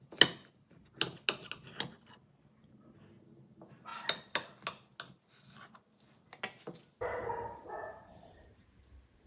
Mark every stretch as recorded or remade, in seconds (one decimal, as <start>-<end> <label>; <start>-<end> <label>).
0.0-9.3 recorded